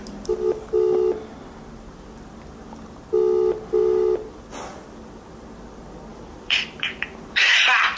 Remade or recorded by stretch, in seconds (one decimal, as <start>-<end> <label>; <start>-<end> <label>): 0.0-6.1 recorded; 6.1-8.0 remade